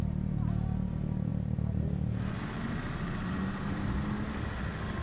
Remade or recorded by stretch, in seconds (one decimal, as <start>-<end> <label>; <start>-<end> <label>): 0.0-5.0 recorded